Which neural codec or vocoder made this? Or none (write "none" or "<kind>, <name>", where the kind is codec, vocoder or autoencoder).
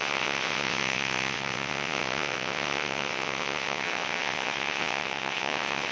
vocoder, WaveNeXt